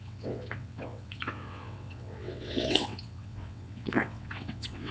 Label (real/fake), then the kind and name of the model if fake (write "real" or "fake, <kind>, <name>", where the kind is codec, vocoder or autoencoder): fake, vocoder, WaveNeXt